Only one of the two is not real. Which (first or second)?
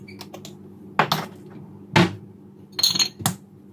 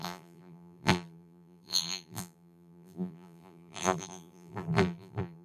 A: second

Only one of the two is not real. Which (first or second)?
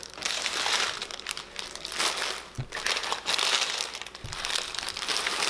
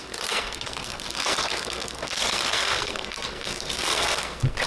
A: second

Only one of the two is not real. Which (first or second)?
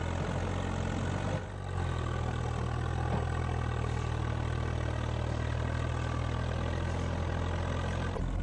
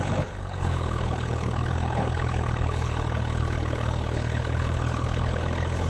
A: second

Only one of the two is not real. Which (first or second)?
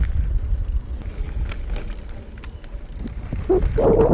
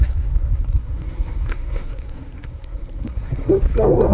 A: second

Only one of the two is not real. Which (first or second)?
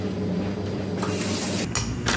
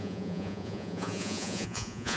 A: second